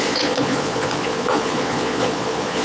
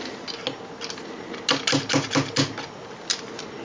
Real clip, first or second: second